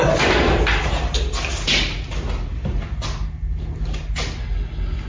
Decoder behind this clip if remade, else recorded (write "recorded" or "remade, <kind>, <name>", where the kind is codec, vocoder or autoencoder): recorded